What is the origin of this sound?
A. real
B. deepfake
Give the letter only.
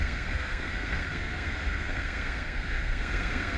B